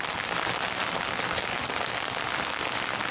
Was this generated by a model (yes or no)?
no